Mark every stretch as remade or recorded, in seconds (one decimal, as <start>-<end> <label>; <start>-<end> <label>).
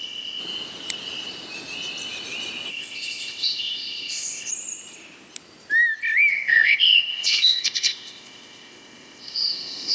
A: 0.0-0.4 remade; 0.4-2.7 recorded; 2.7-4.5 remade; 4.5-6.3 recorded; 6.3-9.9 remade